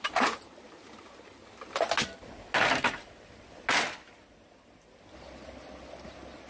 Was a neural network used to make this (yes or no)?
no